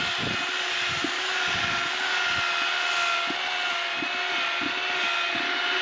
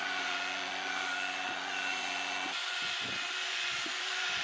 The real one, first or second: first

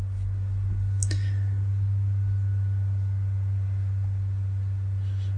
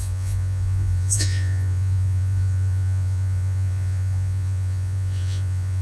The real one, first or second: first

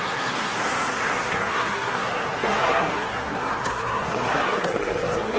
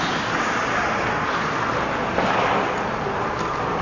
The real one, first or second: second